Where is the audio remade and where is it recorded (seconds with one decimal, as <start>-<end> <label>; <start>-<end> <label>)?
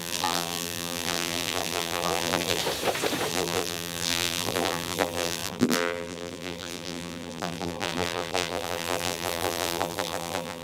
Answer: 0.0-2.6 remade; 2.6-3.3 recorded; 3.3-10.6 remade